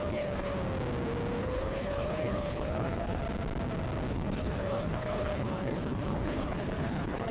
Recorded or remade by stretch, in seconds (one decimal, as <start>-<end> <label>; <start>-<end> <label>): 0.0-0.5 remade; 0.5-1.4 recorded; 1.4-3.2 remade; 3.2-4.1 recorded; 4.1-7.3 remade

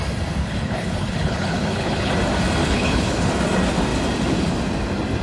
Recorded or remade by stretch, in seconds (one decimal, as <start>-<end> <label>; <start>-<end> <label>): 0.0-0.4 recorded; 0.4-2.1 remade; 2.1-2.6 recorded; 2.6-3.3 remade; 3.3-5.2 recorded

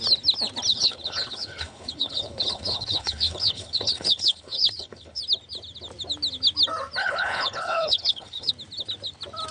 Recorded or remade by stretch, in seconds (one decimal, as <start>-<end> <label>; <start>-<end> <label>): 0.0-0.7 recorded; 0.7-5.2 remade; 5.2-7.0 recorded; 7.0-8.5 remade; 8.5-9.5 recorded

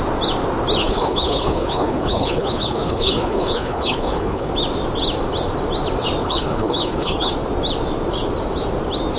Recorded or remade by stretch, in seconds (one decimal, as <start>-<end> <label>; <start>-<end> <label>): 0.0-0.8 recorded; 0.8-4.5 remade; 4.5-6.2 recorded; 6.2-7.3 remade; 7.3-9.2 recorded

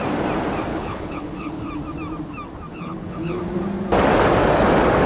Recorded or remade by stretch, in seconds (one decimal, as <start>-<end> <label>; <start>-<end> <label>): 0.0-0.7 recorded; 0.7-1.7 remade; 1.7-2.7 recorded; 2.7-3.4 remade; 3.4-5.1 recorded

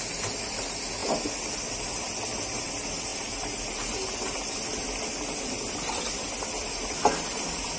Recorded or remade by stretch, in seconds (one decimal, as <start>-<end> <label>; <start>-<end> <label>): 0.0-7.8 recorded

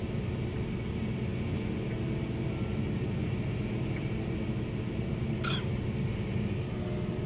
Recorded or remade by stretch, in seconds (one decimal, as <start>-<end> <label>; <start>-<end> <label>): 0.0-7.3 recorded

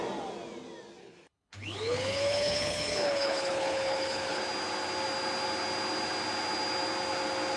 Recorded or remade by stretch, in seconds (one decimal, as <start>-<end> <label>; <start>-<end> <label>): 0.0-1.0 recorded; 1.0-4.4 remade; 4.4-7.6 recorded